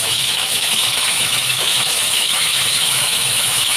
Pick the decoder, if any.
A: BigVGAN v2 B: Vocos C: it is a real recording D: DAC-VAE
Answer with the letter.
D